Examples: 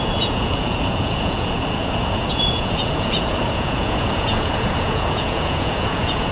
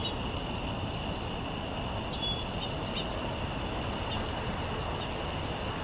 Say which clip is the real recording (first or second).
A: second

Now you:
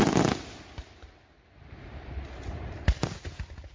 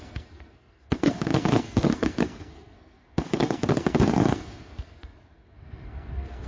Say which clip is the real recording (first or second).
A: first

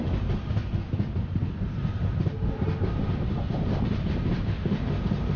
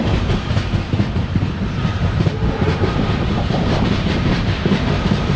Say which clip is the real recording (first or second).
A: first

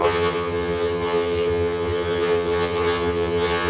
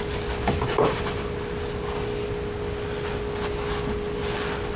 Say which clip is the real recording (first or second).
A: second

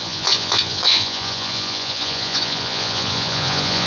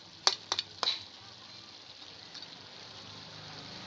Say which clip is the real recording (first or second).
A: second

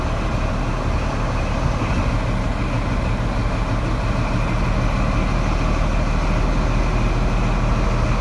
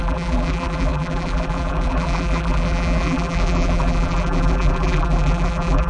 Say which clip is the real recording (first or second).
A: first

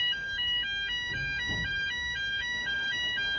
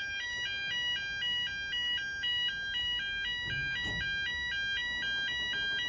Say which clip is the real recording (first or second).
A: second